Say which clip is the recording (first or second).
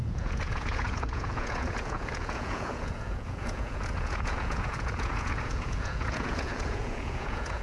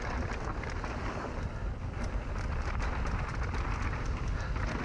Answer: second